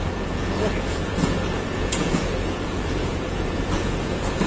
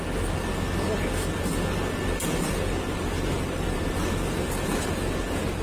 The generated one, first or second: first